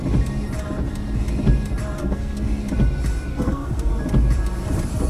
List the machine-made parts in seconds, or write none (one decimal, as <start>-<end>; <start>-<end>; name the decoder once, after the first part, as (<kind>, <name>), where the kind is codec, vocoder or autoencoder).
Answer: 2.0-2.5 (codec, SNAC); 3.3-3.9